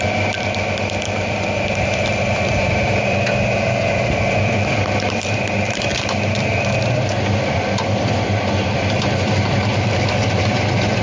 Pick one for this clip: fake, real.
fake